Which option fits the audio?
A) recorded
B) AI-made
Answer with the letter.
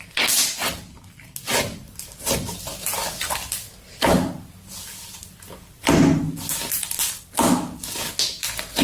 A